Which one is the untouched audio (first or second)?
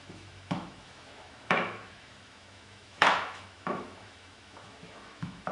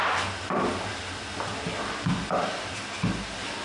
second